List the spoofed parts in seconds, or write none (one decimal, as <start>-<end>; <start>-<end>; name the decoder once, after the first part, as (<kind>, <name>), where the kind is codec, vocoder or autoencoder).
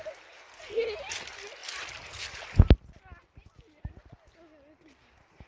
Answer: none